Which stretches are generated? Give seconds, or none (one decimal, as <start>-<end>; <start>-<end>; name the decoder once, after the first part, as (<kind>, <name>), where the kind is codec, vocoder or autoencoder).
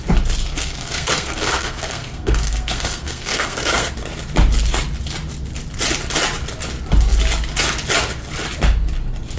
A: 0.5-3.9 (codec, SNAC)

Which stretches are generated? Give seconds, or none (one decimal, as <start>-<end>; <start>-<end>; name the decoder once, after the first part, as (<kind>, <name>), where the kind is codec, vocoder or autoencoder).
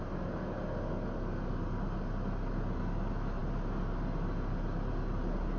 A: none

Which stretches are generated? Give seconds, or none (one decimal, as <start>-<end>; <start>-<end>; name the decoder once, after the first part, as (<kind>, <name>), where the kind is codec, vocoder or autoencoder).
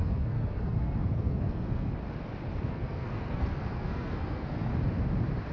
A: 0.0-1.9 (codec, SNAC); 2.7-4.7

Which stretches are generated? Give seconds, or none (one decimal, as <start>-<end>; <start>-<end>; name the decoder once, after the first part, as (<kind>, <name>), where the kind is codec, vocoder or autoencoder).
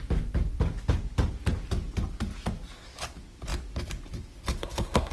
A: 4.6-5.1 (codec, SNAC)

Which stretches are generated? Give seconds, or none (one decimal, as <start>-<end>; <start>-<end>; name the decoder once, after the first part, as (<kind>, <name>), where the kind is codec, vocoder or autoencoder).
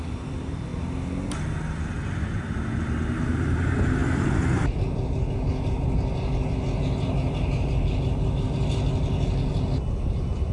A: none